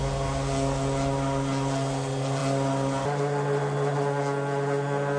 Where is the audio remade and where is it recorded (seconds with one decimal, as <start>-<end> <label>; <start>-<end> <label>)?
0.0-5.2 recorded